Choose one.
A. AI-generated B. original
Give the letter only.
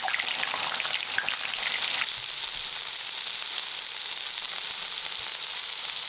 B